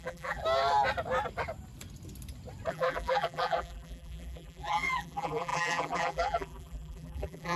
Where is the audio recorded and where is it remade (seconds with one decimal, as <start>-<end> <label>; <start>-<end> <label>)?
0.0-0.4 remade; 0.4-2.7 recorded; 2.7-7.6 remade